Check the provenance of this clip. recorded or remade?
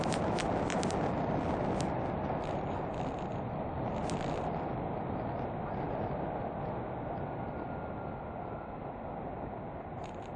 recorded